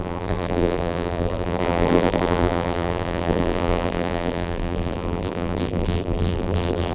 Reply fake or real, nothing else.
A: fake